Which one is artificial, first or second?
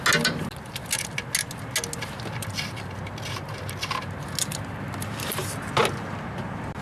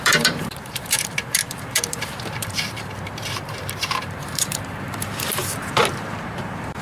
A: second